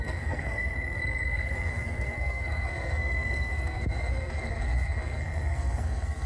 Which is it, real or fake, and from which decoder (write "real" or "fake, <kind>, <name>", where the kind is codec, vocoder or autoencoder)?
fake, codec, SNAC